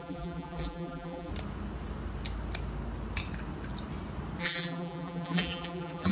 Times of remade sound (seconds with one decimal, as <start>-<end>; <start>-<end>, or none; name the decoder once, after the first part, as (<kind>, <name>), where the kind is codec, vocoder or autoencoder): 0.0-1.3 (vocoder, BigVGAN v2); 4.4-6.1